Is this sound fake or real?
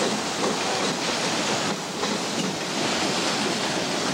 real